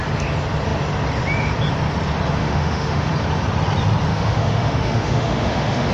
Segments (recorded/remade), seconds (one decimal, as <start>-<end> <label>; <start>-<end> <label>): 0.0-2.4 recorded; 2.4-3.1 remade; 3.1-4.1 recorded; 4.1-5.9 remade